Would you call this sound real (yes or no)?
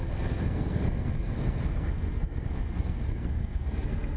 no